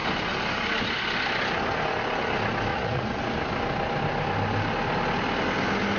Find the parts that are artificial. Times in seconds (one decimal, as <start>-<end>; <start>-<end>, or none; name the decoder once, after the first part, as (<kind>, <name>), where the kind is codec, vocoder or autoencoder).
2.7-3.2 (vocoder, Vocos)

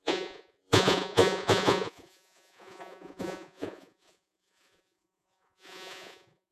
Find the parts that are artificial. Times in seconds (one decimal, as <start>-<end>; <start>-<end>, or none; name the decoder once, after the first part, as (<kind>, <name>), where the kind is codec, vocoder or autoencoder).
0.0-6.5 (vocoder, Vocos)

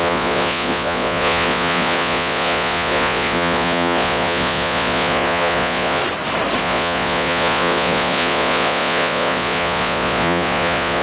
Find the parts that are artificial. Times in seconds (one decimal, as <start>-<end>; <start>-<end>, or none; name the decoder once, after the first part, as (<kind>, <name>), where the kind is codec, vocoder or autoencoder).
0.0-6.0 (vocoder, Vocos); 6.6-11.0